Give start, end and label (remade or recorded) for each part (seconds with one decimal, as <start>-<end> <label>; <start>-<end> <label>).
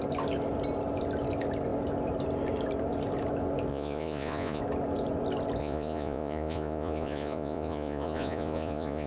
0.0-3.7 recorded; 3.7-4.6 remade; 4.6-5.6 recorded; 5.6-9.1 remade